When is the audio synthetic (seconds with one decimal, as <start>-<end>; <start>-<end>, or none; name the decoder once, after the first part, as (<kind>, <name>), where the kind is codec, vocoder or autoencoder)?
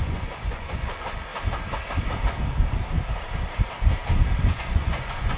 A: 0.0-1.3 (vocoder, Vocos); 4.5-5.4